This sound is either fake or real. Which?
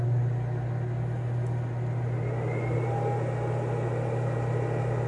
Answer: real